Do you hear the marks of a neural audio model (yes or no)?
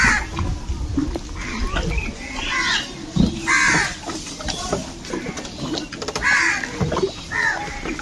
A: no